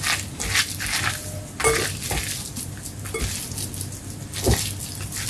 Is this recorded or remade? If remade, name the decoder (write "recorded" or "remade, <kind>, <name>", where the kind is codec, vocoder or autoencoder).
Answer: recorded